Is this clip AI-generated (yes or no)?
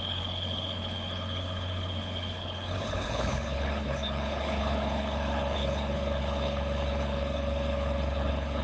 yes